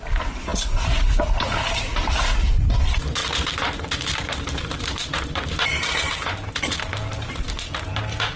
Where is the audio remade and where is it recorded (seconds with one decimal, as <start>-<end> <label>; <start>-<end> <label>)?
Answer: 0.0-3.2 recorded; 3.2-7.5 remade; 7.5-8.4 recorded